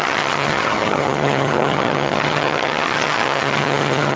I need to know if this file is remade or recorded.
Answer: remade